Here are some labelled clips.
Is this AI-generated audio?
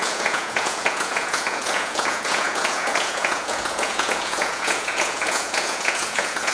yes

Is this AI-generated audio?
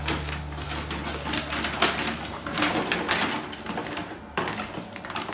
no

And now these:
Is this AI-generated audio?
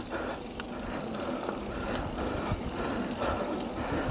no